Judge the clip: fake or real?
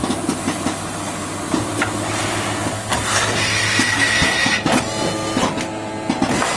real